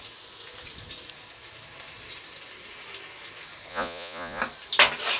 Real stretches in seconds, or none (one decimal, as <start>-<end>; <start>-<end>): 0.0-3.7; 4.4-5.2